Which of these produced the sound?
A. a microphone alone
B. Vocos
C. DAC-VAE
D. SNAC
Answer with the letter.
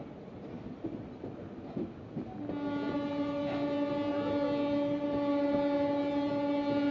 A